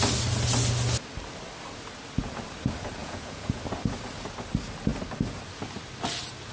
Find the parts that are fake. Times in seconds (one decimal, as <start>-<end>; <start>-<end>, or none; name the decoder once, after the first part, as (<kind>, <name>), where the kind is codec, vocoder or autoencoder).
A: 3.0-3.6 (vocoder, Vocos)